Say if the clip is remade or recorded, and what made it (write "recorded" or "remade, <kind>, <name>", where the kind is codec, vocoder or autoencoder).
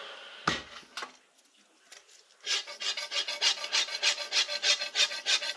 recorded